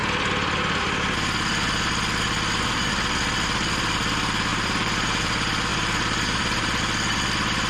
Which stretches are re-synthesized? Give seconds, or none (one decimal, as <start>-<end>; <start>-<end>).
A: 4.5-5.2; 5.7-6.8